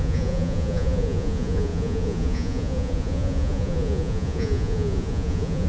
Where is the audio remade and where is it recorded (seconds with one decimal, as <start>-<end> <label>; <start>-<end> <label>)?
0.0-5.7 remade